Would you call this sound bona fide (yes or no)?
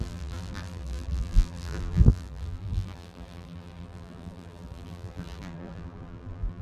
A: no